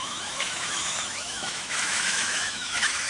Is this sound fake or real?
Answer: fake